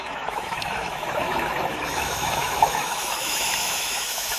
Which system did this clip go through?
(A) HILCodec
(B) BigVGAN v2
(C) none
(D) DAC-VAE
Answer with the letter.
D